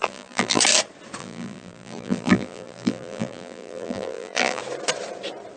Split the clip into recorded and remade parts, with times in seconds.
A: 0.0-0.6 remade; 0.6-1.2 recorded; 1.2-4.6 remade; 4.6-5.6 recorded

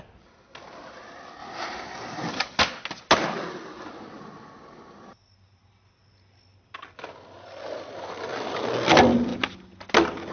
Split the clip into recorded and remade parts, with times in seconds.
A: 0.0-10.3 recorded

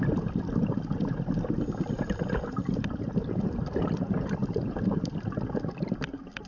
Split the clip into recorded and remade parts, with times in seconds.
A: 0.0-4.4 recorded; 4.4-5.0 remade; 5.0-6.5 recorded

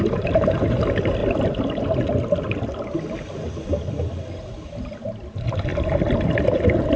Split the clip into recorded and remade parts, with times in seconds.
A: 0.0-7.0 recorded

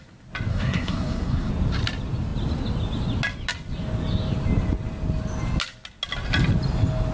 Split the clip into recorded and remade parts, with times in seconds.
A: 0.0-0.5 recorded; 0.5-1.5 remade; 1.5-7.1 recorded

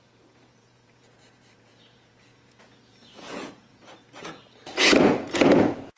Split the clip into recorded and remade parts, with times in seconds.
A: 0.0-6.0 remade